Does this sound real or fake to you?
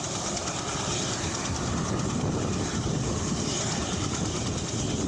real